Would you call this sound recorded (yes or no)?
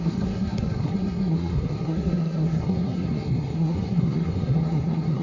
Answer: no